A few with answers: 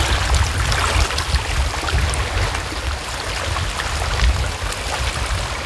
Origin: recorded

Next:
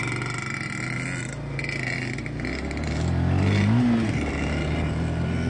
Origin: recorded